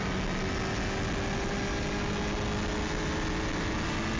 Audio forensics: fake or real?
real